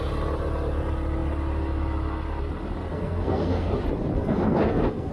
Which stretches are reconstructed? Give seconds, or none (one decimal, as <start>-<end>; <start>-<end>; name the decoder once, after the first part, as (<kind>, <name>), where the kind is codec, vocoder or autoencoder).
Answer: 2.9-3.7 (codec, SNAC); 4.2-5.1